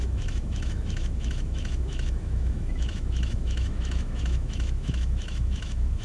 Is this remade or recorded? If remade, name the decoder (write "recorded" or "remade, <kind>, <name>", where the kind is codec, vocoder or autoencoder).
remade, autoencoder, DAC-VAE